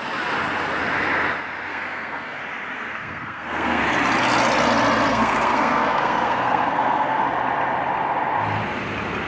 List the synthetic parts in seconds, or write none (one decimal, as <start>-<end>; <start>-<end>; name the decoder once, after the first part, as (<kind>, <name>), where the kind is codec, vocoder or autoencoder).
1.7-2.4 (codec, SNAC); 2.9-3.8; 5.1-7.2